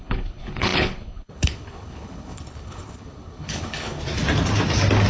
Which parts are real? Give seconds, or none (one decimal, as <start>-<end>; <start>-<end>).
4.0-5.1